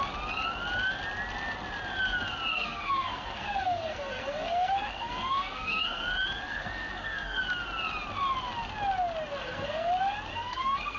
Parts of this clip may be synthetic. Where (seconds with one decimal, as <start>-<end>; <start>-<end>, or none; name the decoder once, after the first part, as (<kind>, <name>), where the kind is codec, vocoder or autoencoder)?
2.5-6.1 (codec, SNAC); 6.5-7.4; 9.4-9.9; 10.3-11.0